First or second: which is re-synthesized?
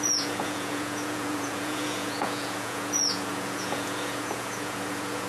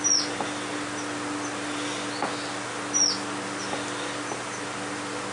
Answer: first